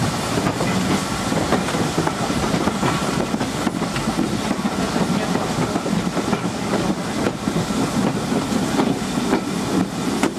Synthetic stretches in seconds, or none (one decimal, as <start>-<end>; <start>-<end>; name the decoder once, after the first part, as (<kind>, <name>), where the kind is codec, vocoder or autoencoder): 6.3-7.0 (codec, DAC)